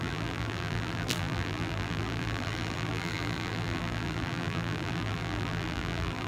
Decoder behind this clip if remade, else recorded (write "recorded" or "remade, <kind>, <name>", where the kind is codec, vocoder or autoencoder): remade, vocoder, BigVGAN v2